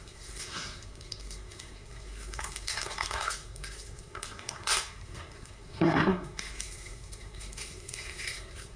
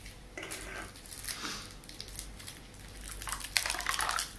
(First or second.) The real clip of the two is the second